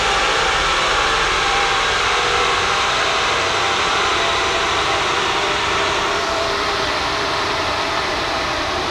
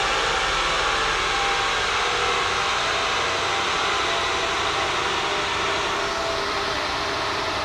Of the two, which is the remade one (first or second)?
first